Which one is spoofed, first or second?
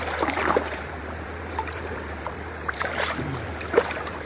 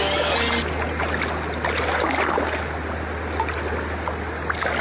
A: first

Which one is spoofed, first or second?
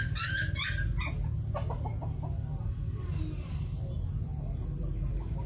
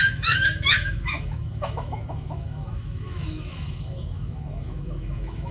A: second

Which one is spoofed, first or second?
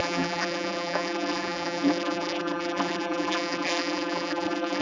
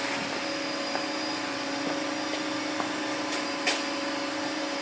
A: first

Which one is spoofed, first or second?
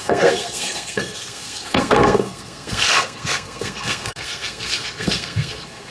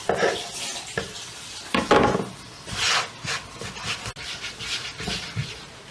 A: first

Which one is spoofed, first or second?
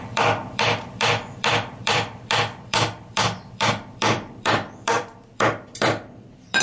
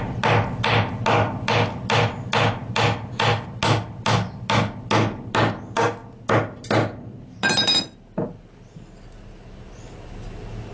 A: first